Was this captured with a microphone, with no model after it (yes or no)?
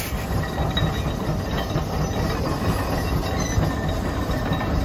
yes